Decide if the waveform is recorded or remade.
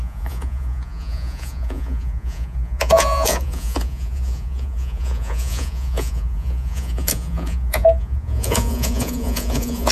remade